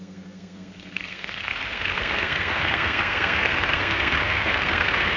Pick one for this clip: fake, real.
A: fake